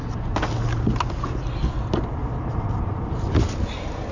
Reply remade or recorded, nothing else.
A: recorded